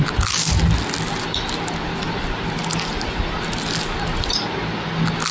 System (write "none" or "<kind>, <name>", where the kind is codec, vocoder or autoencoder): none